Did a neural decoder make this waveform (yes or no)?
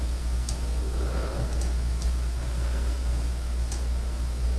yes